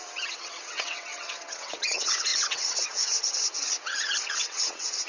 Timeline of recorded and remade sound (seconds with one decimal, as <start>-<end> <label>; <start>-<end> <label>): 0.0-5.1 remade